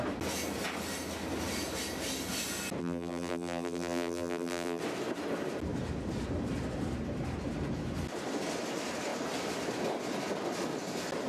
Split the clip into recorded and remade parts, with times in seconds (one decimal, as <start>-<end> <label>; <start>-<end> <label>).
0.0-2.8 recorded; 2.8-4.8 remade; 4.8-11.3 recorded

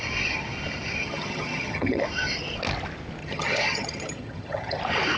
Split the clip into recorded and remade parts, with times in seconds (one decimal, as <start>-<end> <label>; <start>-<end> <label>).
0.0-1.0 recorded; 1.0-2.0 remade; 2.0-3.2 recorded; 3.2-4.8 remade; 4.8-5.2 recorded